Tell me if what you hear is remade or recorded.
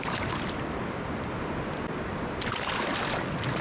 recorded